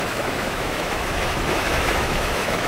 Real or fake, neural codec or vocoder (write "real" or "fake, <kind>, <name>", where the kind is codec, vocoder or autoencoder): fake, autoencoder, DAC-VAE